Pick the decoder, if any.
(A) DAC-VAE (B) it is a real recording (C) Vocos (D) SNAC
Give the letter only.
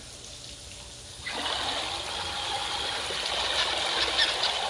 B